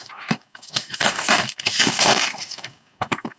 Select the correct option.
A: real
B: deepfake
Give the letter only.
B